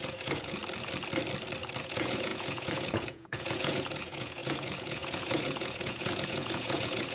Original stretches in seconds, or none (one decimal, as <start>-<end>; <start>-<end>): 0.6-1.8